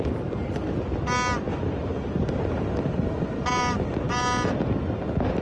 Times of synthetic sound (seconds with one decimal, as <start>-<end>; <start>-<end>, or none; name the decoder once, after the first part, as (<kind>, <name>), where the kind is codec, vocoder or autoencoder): 1.5-4.7 (vocoder, BigVGAN v2)

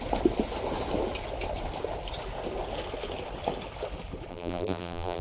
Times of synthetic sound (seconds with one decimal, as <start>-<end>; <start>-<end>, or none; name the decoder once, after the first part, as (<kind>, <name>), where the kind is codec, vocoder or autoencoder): 4.3-5.2 (vocoder, BigVGAN v2)

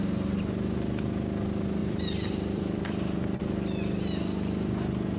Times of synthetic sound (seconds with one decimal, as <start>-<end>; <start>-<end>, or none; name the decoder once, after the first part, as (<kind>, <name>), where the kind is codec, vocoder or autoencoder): 1.8-3.4 (vocoder, BigVGAN v2)

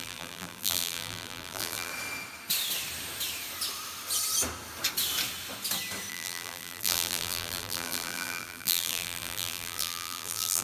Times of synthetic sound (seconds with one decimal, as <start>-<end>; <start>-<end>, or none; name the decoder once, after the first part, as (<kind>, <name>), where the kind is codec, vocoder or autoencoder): 0.0-1.9 (vocoder, BigVGAN v2); 6.1-10.6

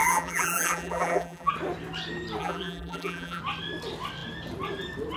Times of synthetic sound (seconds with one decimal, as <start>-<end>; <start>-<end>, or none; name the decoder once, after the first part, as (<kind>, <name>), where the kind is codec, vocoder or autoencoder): 0.0-1.5 (vocoder, BigVGAN v2); 2.4-3.4

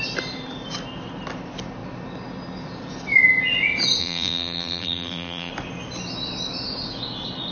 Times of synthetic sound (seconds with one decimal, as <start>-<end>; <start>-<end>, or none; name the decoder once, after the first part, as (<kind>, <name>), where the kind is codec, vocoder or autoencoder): 4.0-5.5 (vocoder, BigVGAN v2)